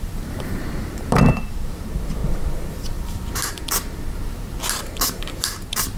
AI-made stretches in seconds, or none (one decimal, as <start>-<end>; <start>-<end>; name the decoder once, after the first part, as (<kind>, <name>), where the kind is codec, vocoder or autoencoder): 0.0-6.0 (vocoder, BigVGAN v2)